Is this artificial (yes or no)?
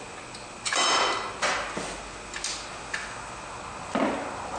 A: no